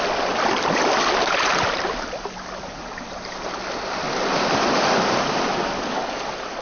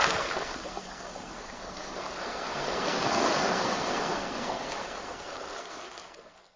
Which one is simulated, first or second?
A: second